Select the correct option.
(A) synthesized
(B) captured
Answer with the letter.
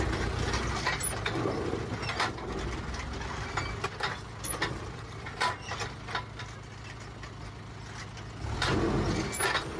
B